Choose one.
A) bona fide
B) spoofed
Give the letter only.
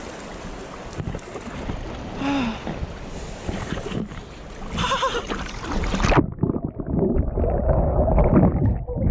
A